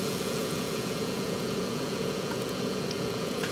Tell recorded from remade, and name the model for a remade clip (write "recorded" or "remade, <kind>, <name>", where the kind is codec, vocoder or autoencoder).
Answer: remade, vocoder, Vocos